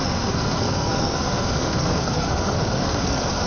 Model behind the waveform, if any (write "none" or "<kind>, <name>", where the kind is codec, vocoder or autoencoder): codec, SNAC